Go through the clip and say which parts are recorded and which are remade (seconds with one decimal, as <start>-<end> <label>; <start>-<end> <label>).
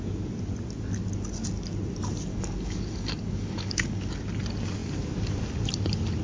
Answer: 0.0-2.3 recorded; 2.3-4.1 remade; 4.1-6.2 recorded